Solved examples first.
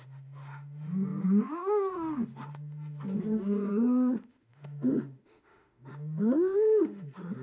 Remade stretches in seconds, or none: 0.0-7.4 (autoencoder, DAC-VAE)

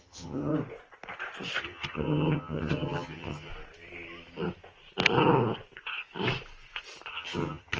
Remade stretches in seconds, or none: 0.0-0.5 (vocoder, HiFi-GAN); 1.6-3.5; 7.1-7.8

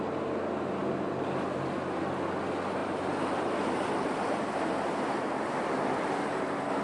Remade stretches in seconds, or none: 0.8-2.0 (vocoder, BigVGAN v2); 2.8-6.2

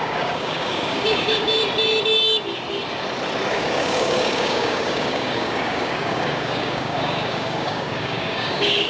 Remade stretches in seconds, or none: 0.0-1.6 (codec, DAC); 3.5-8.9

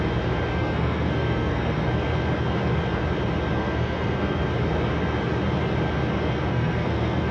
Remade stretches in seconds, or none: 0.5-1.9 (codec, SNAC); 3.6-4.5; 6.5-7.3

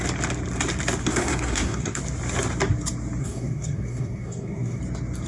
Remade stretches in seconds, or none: 1.0-2.0 (codec, SNAC); 3.2-4.8

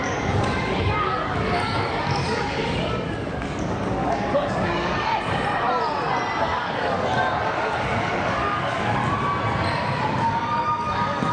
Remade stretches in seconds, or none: 0.0-5.1 (codec, DAC); 6.4-9.0; 10.0-11.3